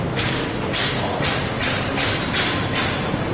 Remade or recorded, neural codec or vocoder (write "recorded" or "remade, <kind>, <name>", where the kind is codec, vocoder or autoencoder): recorded